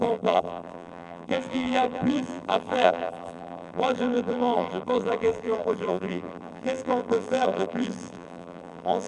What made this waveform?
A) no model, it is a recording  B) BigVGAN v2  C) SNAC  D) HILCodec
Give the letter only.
B